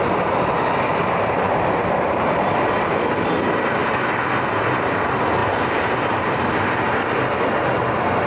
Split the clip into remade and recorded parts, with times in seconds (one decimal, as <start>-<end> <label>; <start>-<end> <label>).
0.0-0.9 recorded; 0.9-2.9 remade; 2.9-5.4 recorded; 5.4-6.7 remade; 6.7-8.3 recorded